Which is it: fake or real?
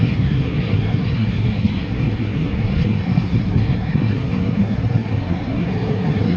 fake